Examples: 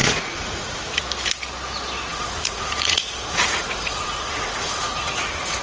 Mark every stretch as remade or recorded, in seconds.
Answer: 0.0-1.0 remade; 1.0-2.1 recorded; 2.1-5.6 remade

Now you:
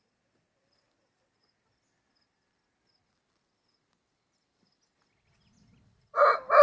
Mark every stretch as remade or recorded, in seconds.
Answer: 0.0-6.6 recorded

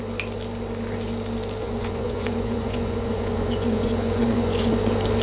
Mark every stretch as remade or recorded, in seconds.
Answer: 0.0-1.6 recorded; 1.6-4.7 remade; 4.7-5.2 recorded

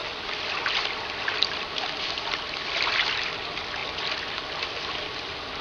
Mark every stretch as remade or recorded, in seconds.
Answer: 0.0-5.6 recorded

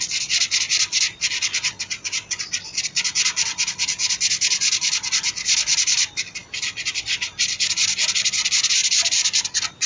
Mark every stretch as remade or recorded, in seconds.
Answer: 0.0-9.9 recorded